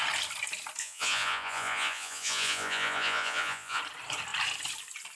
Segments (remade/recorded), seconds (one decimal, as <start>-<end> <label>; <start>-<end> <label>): 0.0-0.8 recorded; 0.8-3.8 remade; 3.8-5.2 recorded